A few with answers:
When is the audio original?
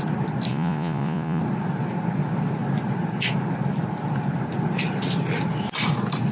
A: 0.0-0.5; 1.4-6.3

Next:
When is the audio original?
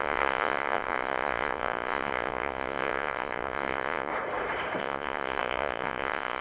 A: 4.1-4.8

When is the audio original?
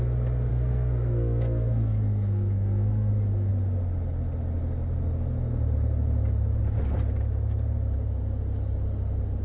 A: 0.0-0.5; 3.1-9.4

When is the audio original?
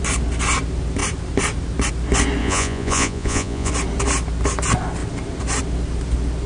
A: 0.0-2.4; 3.7-6.5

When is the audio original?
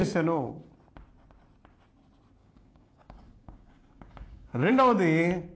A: 0.7-2.4; 4.7-5.5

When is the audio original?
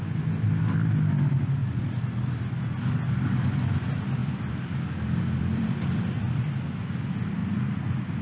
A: 0.0-1.6; 2.5-4.2; 6.4-7.4